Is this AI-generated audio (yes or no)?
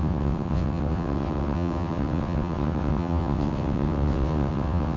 yes